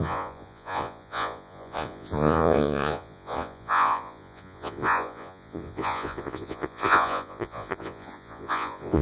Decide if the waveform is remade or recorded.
remade